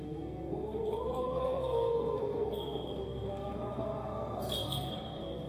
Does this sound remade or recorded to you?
remade